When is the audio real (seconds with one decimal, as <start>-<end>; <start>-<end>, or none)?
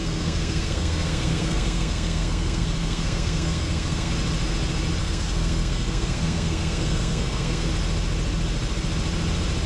4.1-5.0; 7.7-9.7